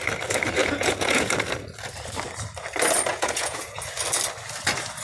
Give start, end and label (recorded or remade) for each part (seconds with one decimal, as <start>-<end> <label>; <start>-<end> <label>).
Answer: 0.0-0.6 recorded; 0.6-1.3 remade; 1.3-3.1 recorded; 3.1-3.8 remade; 3.8-5.0 recorded